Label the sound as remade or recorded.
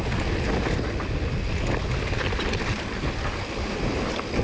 recorded